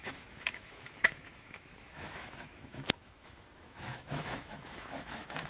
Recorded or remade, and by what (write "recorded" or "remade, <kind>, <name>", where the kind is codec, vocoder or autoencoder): remade, autoencoder, DAC-VAE